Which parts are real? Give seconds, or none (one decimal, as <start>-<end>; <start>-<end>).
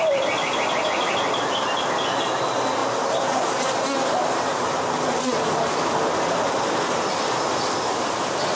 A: 0.0-8.6